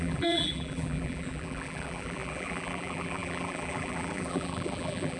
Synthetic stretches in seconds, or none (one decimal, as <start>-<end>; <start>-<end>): 0.0-5.2